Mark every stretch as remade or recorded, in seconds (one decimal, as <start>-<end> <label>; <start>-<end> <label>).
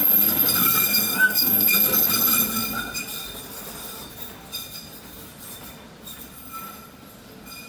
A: 0.0-0.6 recorded; 0.6-1.7 remade; 1.7-7.7 recorded